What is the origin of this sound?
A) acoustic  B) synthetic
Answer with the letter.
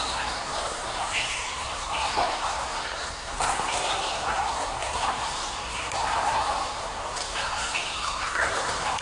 B